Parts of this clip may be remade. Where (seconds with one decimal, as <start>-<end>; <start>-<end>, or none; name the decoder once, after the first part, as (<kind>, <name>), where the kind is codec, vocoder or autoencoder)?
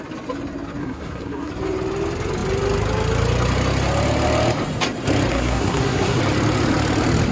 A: 0.8-1.5 (codec, SNAC); 5.3-6.2